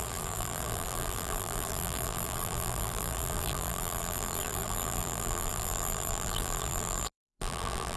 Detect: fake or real fake